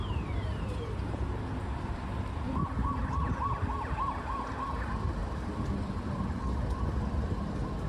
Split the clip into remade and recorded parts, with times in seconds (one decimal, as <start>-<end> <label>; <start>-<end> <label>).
0.0-0.5 recorded; 0.5-2.0 remade; 2.0-5.2 recorded; 5.2-5.9 remade; 5.9-7.9 recorded